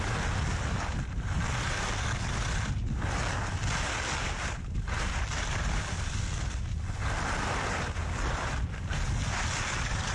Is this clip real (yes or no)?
yes